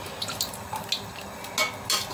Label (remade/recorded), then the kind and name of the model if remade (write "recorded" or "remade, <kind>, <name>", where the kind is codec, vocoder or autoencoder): recorded